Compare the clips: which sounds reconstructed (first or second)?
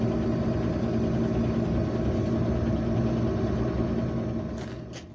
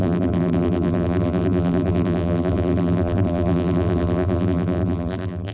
second